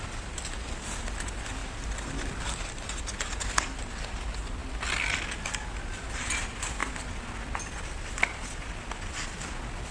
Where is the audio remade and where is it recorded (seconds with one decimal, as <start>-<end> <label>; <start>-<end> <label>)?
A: 0.0-1.6 recorded; 1.6-3.0 remade; 3.0-9.9 recorded